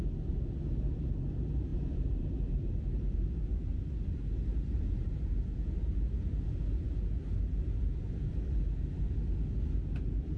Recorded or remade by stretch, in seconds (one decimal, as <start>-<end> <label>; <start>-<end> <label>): 0.0-1.7 recorded; 1.7-3.7 remade; 3.7-4.5 recorded; 4.5-6.3 remade; 6.3-10.4 recorded

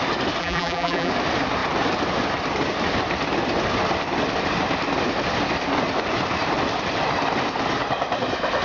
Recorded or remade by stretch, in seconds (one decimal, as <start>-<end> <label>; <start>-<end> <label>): 0.0-0.4 recorded; 0.4-1.1 remade; 1.1-8.6 recorded

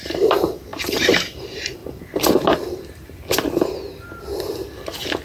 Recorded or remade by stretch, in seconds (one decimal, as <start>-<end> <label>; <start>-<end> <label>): 0.0-1.8 remade; 1.8-5.2 recorded